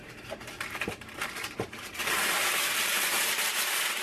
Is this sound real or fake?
fake